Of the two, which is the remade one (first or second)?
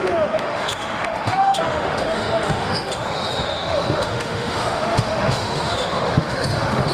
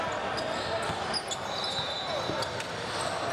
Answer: first